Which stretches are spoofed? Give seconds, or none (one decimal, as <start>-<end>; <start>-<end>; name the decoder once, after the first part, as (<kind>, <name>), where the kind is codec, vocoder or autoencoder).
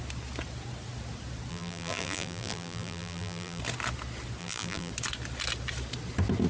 1.5-3.6 (vocoder, BigVGAN v2); 4.4-4.9